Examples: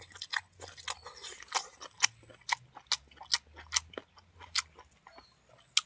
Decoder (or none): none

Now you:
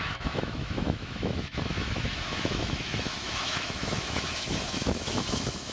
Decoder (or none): autoencoder, DAC-VAE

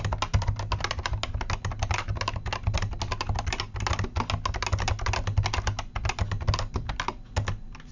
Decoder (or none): none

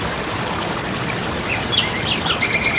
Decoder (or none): vocoder, BigVGAN v2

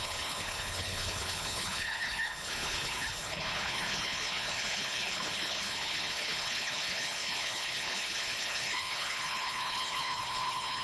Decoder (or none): codec, HILCodec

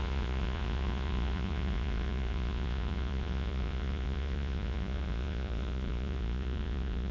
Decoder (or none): vocoder, Vocos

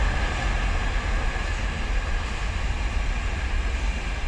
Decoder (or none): none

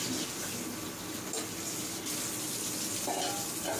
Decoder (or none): none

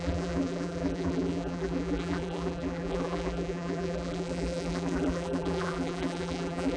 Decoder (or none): vocoder, BigVGAN v2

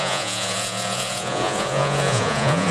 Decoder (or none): vocoder, Vocos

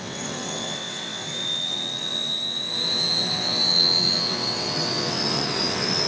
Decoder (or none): vocoder, WaveNeXt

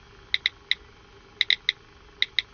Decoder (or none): none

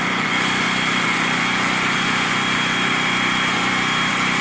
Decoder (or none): vocoder, Vocos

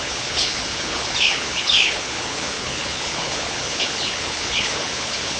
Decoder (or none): codec, HILCodec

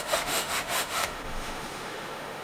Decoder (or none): autoencoder, DAC-VAE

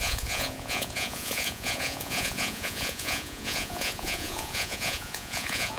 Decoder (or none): vocoder, Vocos